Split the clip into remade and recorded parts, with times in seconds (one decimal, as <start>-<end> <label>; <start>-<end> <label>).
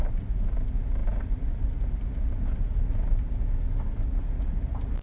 0.0-5.0 recorded